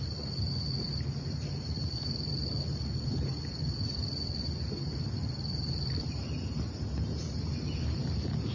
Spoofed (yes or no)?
yes